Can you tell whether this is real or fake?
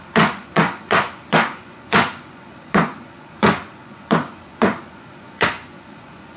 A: fake